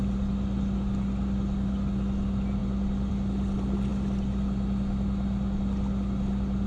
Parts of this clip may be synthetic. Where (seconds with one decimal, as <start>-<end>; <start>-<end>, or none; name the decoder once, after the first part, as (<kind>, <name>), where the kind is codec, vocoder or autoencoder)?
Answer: none